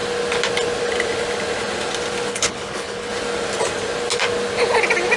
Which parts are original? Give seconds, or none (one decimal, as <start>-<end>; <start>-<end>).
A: 0.0-2.3; 3.1-5.2